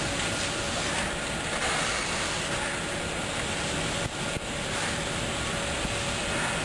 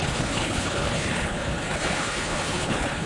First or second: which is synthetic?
second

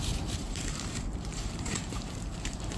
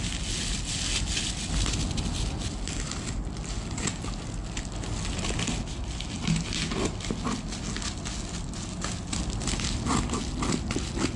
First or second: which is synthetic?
first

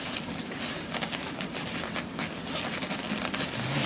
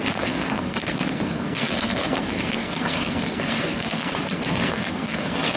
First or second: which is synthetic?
second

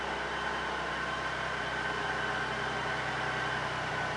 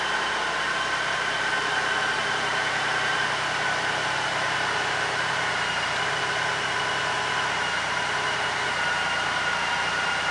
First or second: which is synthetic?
second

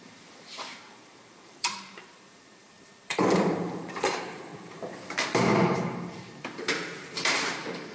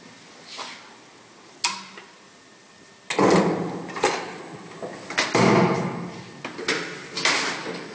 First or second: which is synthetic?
first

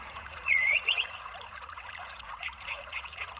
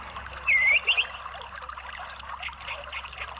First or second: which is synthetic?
first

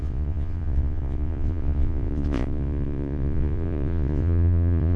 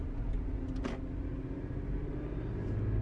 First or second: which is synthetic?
first